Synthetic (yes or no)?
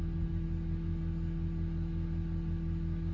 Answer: no